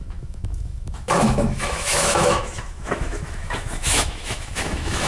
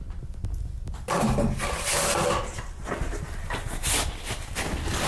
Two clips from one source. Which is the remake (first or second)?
first